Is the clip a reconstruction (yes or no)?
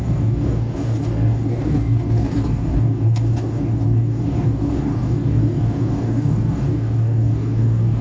yes